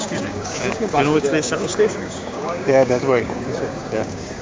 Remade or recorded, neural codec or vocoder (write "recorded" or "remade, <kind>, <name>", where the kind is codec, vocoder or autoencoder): remade, codec, DAC